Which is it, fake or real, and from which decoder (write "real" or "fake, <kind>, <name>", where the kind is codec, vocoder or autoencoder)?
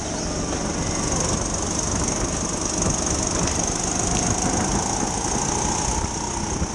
real